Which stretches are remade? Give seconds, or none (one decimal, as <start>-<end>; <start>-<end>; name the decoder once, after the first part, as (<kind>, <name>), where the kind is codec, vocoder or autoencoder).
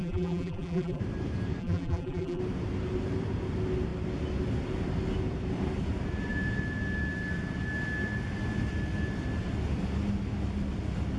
0.0-1.0 (vocoder, BigVGAN v2); 1.6-2.4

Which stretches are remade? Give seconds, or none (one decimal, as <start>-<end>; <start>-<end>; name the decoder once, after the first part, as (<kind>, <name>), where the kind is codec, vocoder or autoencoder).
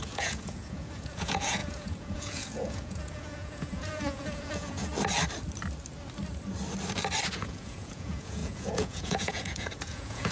0.0-4.9 (vocoder, Vocos); 7.3-10.3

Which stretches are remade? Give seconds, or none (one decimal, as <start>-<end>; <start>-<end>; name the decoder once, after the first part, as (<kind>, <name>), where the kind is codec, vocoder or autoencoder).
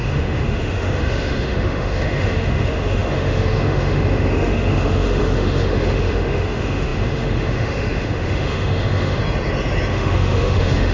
0.0-9.2 (autoencoder, DAC-VAE); 9.9-10.9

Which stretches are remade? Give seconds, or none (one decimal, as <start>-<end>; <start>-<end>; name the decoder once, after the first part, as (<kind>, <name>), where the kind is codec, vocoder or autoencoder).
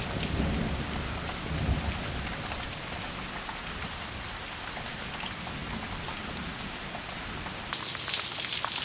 none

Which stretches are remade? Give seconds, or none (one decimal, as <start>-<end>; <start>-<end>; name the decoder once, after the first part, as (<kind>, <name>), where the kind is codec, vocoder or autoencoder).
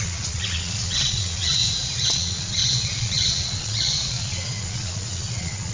0.0-1.6 (vocoder, Vocos); 2.1-5.7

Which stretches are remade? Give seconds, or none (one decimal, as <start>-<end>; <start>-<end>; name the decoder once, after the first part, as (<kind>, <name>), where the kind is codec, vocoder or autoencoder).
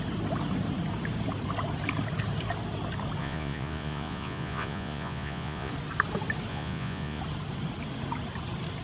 3.2-5.7 (vocoder, Vocos); 6.5-7.2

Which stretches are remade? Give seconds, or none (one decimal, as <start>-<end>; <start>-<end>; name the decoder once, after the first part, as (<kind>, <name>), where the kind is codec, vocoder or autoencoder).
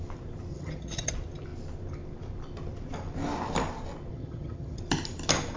0.5-1.1 (vocoder, HiFi-GAN); 4.1-4.8